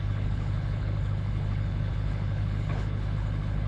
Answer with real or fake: fake